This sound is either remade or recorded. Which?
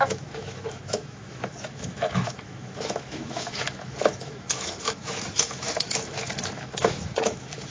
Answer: remade